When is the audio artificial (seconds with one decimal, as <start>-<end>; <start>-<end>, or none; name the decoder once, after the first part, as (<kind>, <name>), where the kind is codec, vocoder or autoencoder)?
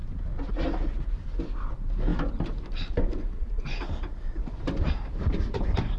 0.0-0.5 (vocoder, BigVGAN v2); 2.1-6.0